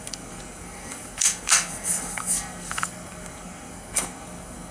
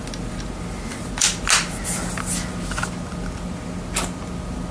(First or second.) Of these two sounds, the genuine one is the second